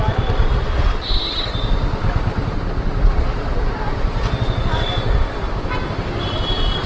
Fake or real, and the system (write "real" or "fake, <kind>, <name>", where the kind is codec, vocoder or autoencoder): real